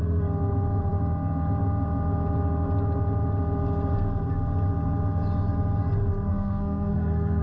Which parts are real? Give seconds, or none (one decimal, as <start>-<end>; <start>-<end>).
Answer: 0.0-6.3